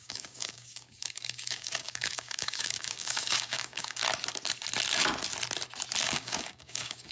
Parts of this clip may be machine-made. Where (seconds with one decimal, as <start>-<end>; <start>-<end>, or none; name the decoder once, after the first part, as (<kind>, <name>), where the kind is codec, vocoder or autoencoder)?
0.0-4.0 (codec, DAC); 6.0-7.1